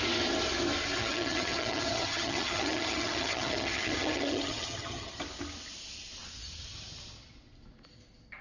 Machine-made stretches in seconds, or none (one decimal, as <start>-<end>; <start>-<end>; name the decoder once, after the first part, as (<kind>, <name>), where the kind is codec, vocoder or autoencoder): 1.0-5.2 (vocoder, HiFi-GAN)